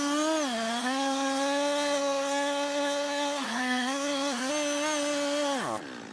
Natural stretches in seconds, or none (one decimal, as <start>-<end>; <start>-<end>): 0.0-0.8; 4.5-6.1